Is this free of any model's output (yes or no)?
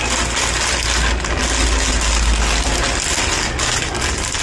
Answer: yes